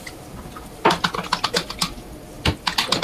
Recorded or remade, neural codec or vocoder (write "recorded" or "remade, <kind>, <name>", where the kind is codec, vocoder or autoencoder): recorded